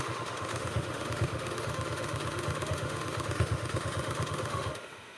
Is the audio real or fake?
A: fake